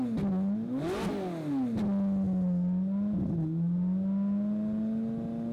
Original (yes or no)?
yes